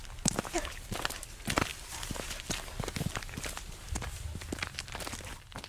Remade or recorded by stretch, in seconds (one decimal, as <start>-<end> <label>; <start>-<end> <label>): 0.0-0.9 remade; 0.9-5.7 recorded